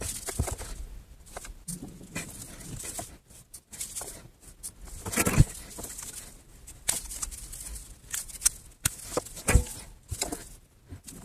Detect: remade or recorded recorded